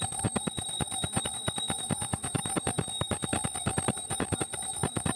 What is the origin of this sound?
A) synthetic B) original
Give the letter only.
B